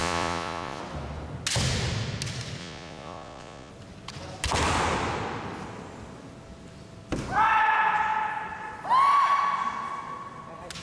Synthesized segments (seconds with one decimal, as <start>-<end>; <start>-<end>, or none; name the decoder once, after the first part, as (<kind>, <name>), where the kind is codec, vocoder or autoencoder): 0.0-0.8 (vocoder, Vocos); 2.6-3.7